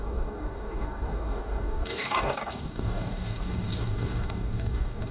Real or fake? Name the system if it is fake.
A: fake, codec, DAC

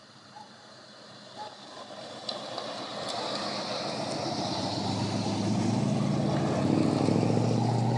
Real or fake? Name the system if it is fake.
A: real